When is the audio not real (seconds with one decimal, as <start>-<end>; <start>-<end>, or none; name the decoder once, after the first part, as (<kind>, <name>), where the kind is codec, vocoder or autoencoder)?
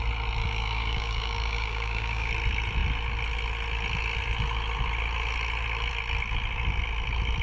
0.4-2.3 (codec, DAC)